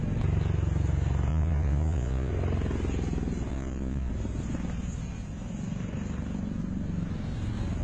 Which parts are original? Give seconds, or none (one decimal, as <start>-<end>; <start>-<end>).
0.0-1.3; 2.3-3.5; 4.1-7.8